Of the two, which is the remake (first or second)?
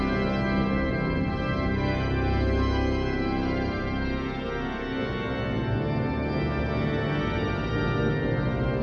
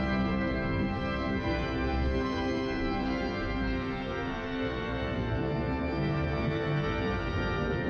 second